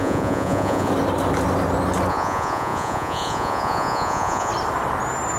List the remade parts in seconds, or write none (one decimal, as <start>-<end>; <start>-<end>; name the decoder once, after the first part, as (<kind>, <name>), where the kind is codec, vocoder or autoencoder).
0.0-0.9 (vocoder, Vocos); 2.1-4.5